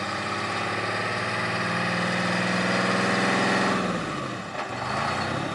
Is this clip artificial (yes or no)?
no